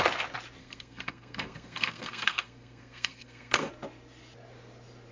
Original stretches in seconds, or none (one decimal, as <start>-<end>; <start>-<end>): 0.0-0.6; 3.7-5.1